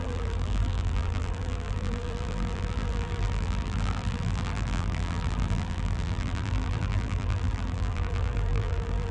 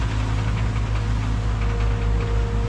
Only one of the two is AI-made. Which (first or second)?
first